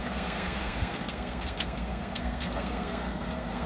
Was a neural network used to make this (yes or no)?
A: yes